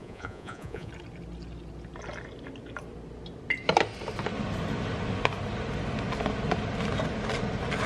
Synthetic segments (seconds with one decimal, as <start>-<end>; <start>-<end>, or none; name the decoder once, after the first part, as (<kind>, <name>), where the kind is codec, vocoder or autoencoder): 0.0-0.9 (vocoder, Vocos)